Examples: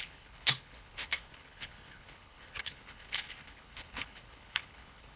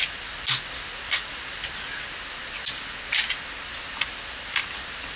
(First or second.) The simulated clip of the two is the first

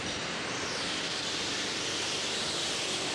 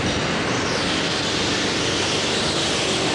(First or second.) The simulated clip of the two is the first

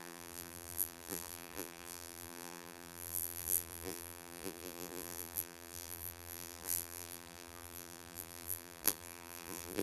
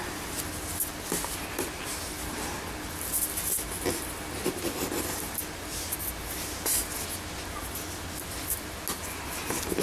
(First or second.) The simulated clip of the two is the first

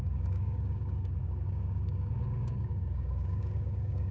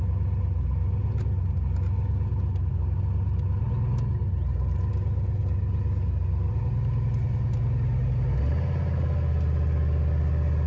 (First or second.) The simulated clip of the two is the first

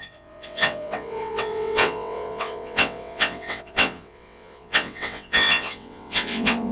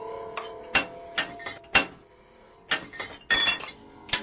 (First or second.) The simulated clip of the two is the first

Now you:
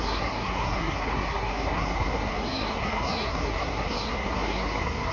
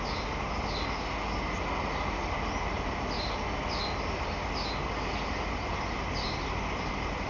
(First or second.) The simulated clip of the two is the first